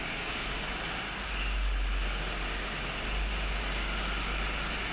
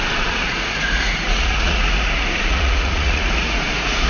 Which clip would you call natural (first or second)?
first